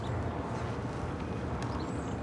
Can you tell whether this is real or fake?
real